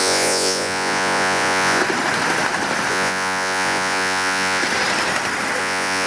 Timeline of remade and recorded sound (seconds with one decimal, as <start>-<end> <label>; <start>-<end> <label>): 0.0-1.8 remade; 1.8-2.9 recorded; 2.9-4.6 remade; 4.6-5.6 recorded; 5.6-6.1 remade